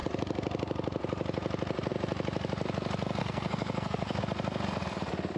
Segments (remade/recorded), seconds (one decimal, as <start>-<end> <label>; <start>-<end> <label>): 0.0-3.2 recorded; 3.2-4.2 remade; 4.2-5.4 recorded